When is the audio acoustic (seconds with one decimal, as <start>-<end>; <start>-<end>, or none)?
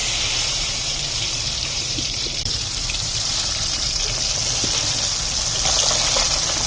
4.0-6.7